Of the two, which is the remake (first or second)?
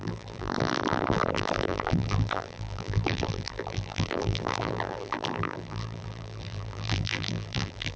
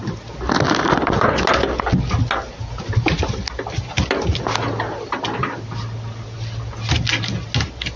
first